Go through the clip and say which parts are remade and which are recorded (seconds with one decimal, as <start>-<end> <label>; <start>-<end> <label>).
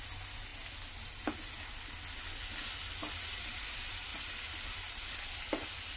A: 0.0-6.0 recorded